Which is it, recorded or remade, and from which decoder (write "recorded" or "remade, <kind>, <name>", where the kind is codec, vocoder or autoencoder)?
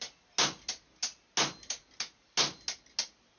recorded